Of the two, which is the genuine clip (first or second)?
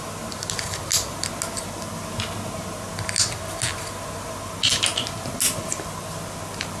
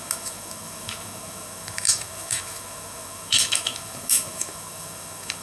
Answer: first